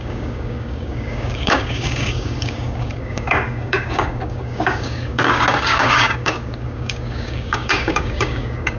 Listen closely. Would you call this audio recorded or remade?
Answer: remade